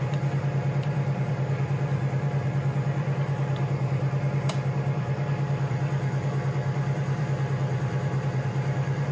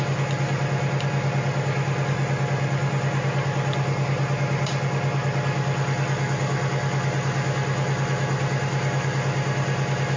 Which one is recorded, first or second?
second